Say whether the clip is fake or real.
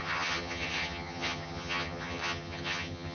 fake